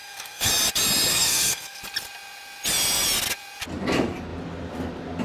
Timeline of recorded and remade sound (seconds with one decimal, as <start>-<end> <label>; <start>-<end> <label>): 0.0-0.5 remade; 0.5-1.1 recorded; 1.1-1.8 remade; 1.8-5.2 recorded